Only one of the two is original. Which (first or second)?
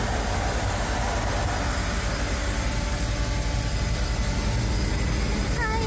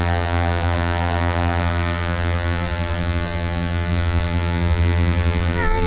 first